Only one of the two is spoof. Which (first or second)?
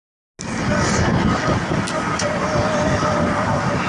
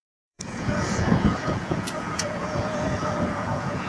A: second